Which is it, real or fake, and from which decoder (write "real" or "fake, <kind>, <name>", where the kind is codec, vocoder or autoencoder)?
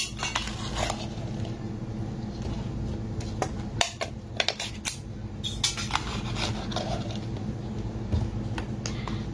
real